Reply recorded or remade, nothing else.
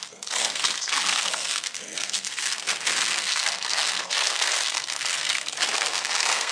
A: remade